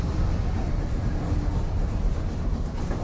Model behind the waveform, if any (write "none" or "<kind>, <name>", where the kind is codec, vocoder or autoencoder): none